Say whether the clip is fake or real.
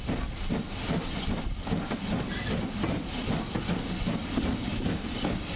real